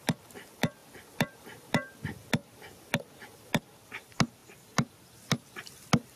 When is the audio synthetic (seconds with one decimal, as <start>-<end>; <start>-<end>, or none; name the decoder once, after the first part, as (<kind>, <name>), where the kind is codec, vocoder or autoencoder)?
none